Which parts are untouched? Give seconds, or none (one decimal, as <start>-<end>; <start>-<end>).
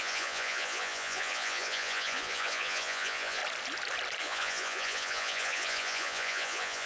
3.4-4.2